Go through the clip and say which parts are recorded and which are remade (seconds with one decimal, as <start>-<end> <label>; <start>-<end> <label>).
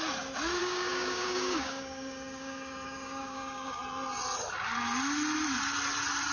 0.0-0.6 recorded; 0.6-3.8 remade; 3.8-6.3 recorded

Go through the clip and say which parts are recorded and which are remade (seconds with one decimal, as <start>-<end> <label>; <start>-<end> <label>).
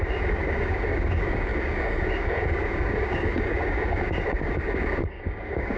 0.0-5.8 remade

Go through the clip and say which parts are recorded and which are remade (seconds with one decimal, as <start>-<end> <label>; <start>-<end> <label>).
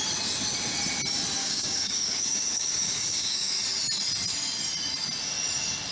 0.0-1.4 recorded; 1.4-3.5 remade; 3.5-5.9 recorded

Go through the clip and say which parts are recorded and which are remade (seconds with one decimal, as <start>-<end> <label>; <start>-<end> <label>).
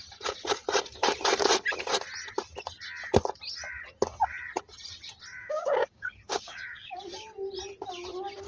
0.0-5.3 recorded; 5.3-7.0 remade; 7.0-8.5 recorded